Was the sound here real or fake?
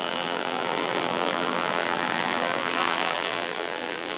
fake